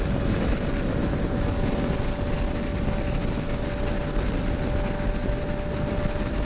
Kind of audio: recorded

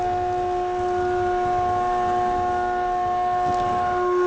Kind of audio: recorded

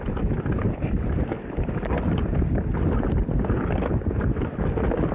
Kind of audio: recorded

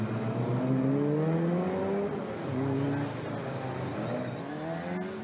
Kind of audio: recorded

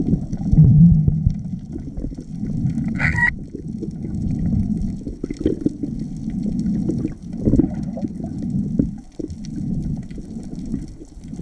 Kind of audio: recorded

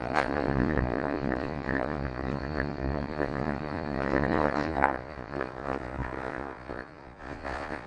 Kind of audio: remade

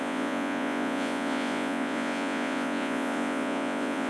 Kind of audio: remade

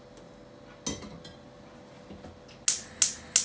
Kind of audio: recorded